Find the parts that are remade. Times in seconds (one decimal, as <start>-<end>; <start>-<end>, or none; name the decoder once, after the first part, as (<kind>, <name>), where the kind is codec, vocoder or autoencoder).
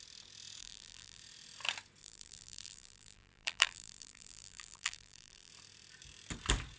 0.6-1.2 (vocoder, BigVGAN v2); 2.0-5.5